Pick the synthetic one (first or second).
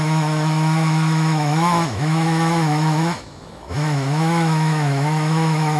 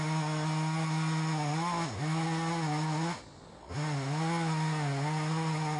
first